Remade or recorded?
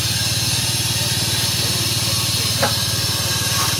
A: recorded